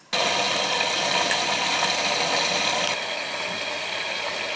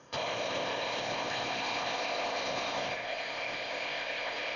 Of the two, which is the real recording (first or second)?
first